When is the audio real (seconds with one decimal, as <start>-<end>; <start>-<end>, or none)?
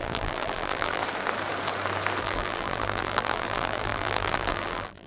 1.0-2.2